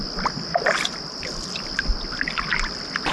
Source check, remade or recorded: remade